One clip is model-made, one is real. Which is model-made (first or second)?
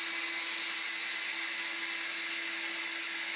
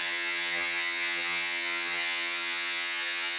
second